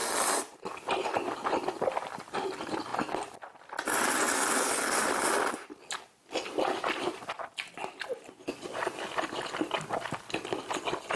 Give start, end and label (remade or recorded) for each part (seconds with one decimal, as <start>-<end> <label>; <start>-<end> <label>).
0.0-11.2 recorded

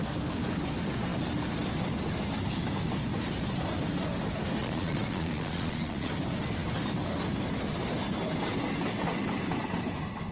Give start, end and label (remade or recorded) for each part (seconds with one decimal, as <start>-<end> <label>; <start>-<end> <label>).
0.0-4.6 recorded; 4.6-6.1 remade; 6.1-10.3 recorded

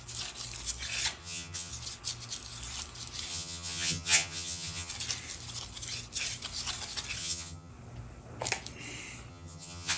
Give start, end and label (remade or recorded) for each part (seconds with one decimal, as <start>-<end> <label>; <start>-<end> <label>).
0.0-1.2 recorded; 1.2-1.7 remade; 1.7-3.3 recorded; 3.3-4.9 remade; 4.9-7.2 recorded; 7.2-7.7 remade; 7.7-9.3 recorded; 9.3-10.0 remade

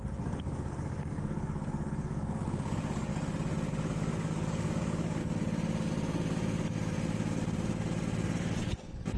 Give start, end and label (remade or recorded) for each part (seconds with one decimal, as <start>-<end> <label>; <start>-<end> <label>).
0.0-3.1 remade; 3.1-3.7 recorded; 3.7-5.2 remade; 5.2-9.2 recorded

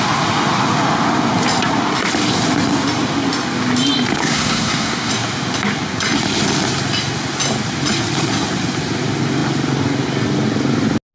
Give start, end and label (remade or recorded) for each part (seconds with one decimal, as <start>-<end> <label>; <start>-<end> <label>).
0.0-4.2 recorded; 4.2-5.1 remade; 5.1-11.1 recorded

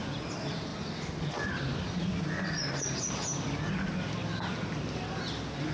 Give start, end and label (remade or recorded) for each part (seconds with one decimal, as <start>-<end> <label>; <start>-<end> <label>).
0.0-5.7 recorded